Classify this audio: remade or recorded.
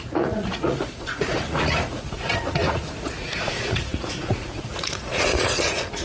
remade